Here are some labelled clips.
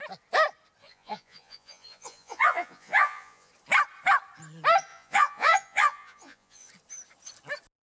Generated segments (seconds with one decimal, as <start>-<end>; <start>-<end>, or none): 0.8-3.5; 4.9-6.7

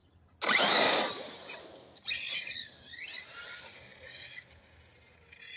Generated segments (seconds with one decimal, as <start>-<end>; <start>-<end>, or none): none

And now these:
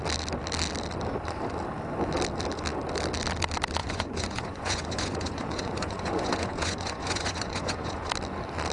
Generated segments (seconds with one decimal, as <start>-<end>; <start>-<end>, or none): 3.8-8.1